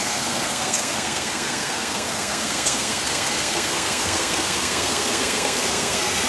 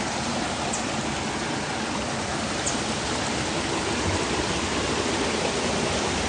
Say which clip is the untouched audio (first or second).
second